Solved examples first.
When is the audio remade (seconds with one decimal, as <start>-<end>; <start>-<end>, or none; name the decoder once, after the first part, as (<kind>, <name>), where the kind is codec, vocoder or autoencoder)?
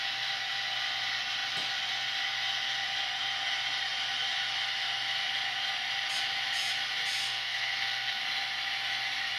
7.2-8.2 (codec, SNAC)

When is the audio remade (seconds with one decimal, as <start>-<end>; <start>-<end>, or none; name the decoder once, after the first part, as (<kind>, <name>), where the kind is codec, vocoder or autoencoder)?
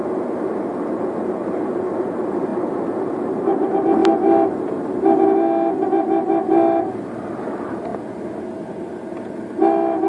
none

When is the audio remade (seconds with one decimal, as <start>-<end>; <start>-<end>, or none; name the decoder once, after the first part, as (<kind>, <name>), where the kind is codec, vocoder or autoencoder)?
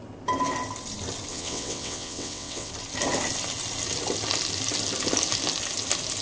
1.3-2.7 (vocoder, WaveNeXt)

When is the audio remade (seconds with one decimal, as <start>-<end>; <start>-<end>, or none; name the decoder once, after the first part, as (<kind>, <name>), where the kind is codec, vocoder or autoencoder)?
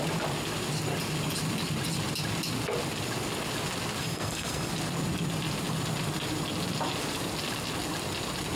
4.0-4.7 (codec, SNAC)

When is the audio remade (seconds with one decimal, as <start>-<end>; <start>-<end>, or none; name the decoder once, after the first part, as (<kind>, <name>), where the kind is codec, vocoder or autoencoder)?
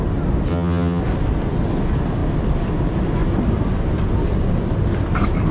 0.5-1.0 (vocoder, HiFi-GAN)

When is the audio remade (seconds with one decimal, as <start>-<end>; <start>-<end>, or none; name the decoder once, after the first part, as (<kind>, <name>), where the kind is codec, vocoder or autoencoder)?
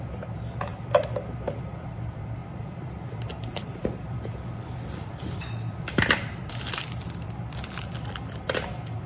0.0-0.7 (vocoder, BigVGAN v2); 1.9-9.1